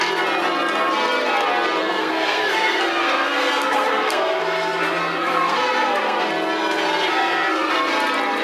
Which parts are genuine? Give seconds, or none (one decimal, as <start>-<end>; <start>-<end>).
0.0-1.8; 6.3-7.1; 7.7-8.4